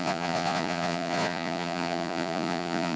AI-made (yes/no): yes